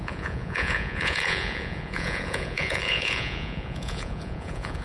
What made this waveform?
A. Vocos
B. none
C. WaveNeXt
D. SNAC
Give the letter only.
A